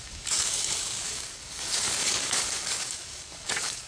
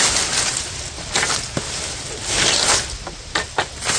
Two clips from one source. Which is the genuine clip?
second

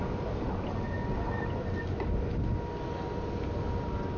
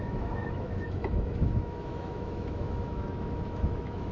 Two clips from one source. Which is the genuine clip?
first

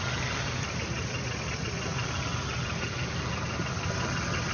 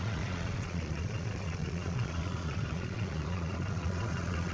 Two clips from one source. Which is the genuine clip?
first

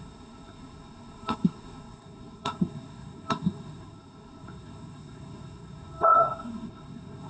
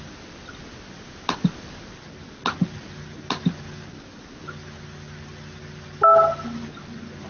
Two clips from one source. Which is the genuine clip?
second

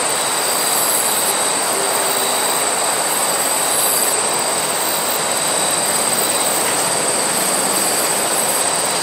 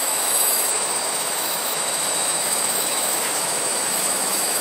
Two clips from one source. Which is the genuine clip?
first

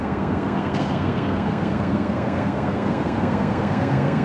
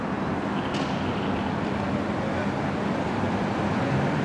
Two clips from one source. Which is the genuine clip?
second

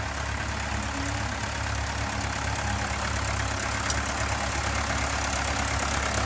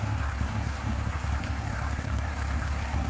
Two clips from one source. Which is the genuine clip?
first